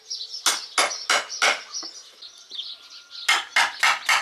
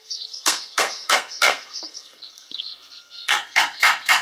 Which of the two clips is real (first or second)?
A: first